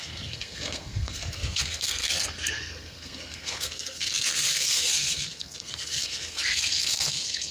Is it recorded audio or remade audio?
remade